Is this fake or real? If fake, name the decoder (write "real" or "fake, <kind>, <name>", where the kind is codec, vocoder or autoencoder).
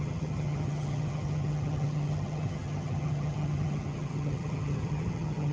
fake, vocoder, HiFi-GAN